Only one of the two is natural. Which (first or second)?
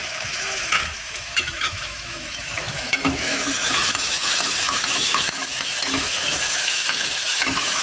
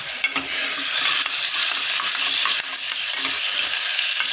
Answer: second